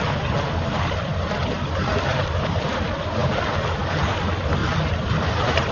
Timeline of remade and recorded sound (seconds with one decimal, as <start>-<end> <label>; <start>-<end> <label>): 0.0-2.1 recorded; 2.1-2.7 remade; 2.7-3.2 recorded; 3.2-4.1 remade; 4.1-4.6 recorded; 4.6-5.7 remade